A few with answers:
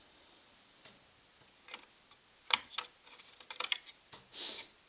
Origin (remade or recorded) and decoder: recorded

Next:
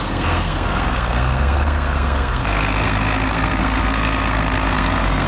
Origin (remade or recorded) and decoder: remade, codec, SNAC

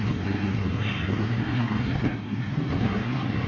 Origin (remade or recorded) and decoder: remade, codec, SNAC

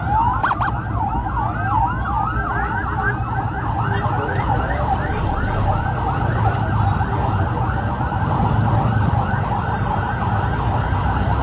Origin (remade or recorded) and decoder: recorded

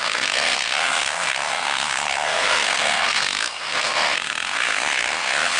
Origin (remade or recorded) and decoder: remade, codec, SNAC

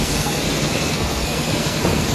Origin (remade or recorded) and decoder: remade, codec, SNAC